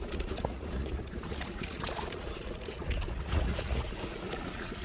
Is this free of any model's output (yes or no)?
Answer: no